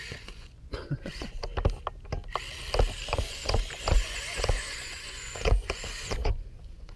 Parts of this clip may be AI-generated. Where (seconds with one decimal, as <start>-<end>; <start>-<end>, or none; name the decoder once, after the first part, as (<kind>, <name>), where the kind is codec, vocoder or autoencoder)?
0.0-1.5 (vocoder, Vocos); 3.1-7.0